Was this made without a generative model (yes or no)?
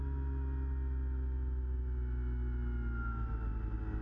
yes